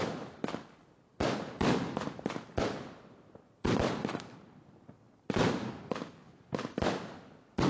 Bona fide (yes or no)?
yes